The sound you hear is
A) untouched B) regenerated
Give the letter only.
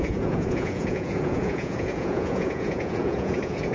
B